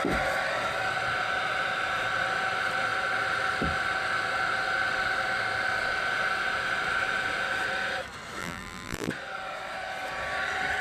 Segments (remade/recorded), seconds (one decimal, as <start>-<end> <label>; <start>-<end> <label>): 0.0-8.4 recorded; 8.4-9.1 remade; 9.1-10.8 recorded